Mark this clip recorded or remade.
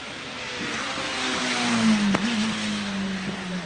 recorded